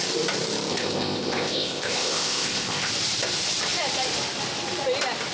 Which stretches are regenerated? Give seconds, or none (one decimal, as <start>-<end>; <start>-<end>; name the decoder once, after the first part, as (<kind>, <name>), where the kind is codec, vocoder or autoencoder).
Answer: 0.7-2.9 (codec, ZipCodec)